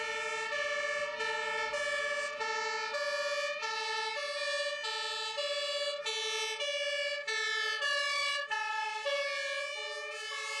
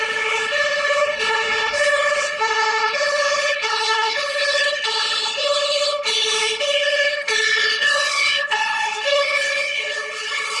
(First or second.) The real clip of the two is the first